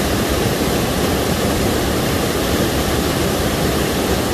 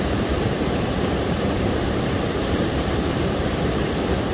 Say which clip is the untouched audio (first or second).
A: first